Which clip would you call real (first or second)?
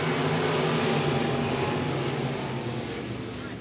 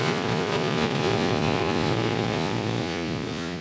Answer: first